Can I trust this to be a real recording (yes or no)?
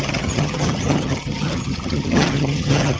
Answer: no